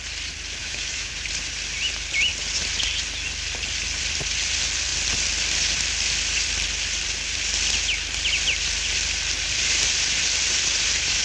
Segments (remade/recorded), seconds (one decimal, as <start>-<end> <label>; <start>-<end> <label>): 0.0-0.6 recorded; 0.6-1.1 remade; 1.1-11.2 recorded